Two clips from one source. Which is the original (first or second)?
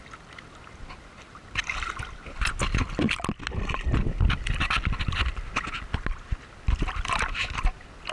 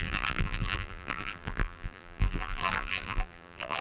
first